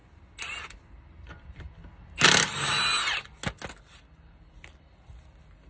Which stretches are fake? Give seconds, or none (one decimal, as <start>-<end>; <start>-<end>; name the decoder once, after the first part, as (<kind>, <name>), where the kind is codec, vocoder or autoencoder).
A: none